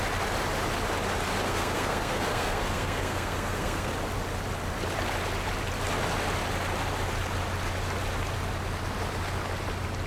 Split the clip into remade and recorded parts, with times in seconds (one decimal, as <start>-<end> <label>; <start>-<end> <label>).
0.0-1.4 recorded; 1.4-3.9 remade; 3.9-10.1 recorded